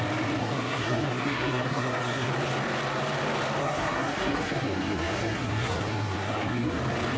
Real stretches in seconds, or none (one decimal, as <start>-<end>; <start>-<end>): 0.0-0.4; 2.3-3.6; 6.8-7.2

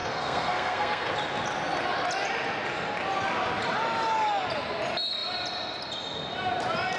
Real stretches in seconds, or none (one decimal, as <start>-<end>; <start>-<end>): 1.1-7.0

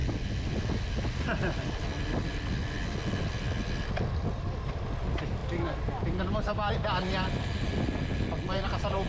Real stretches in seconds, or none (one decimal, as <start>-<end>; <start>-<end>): 0.0-9.1

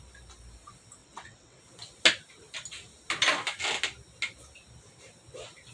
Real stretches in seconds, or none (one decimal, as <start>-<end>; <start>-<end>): 0.0-1.0; 1.6-5.7

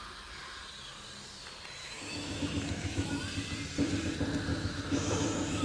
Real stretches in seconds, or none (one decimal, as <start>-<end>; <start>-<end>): 0.0-1.8; 3.2-4.5